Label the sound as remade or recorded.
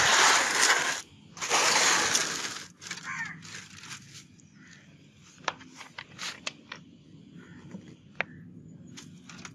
recorded